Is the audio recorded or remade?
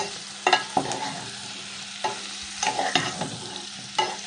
recorded